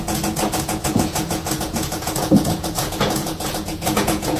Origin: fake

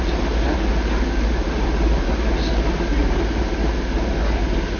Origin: real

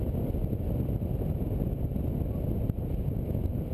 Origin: real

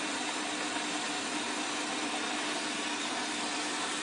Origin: real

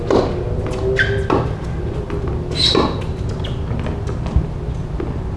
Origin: real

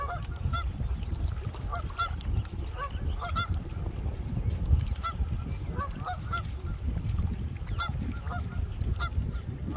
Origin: real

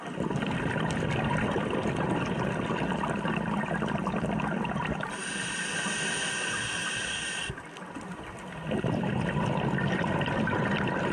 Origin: real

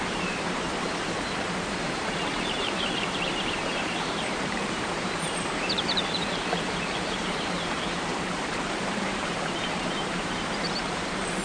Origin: fake